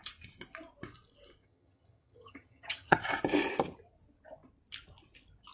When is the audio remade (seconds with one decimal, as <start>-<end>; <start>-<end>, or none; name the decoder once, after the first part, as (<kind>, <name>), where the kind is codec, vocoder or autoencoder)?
1.4-3.0 (vocoder, HiFi-GAN)